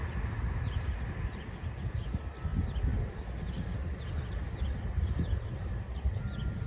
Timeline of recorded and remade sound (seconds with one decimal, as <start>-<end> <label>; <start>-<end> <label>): 0.0-6.7 recorded